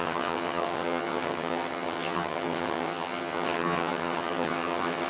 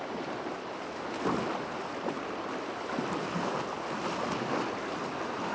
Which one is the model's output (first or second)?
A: first